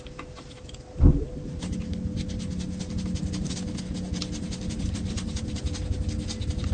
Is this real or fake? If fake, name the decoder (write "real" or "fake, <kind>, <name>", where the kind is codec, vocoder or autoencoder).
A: real